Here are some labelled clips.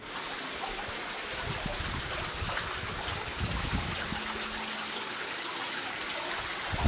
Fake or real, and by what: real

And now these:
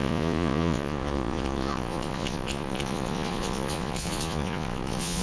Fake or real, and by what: fake, vocoder, Vocos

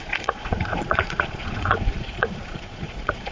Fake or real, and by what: fake, vocoder, Vocos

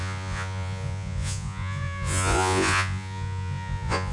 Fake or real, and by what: fake, vocoder, Vocos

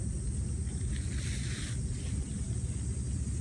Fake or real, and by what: real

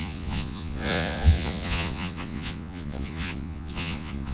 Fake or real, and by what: fake, vocoder, Vocos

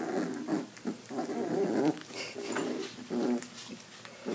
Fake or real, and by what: real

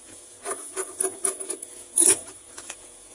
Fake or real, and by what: fake, vocoder, Vocos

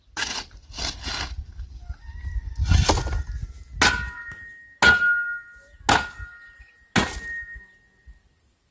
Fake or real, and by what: real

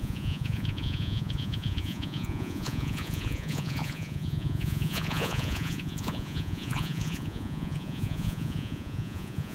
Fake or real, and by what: fake, vocoder, Vocos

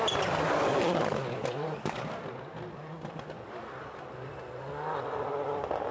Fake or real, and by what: real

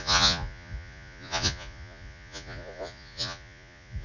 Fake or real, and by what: fake, vocoder, Vocos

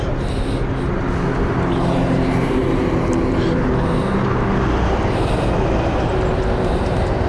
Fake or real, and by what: real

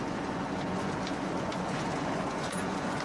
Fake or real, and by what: fake, vocoder, Vocos